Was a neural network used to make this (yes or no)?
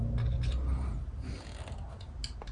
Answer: no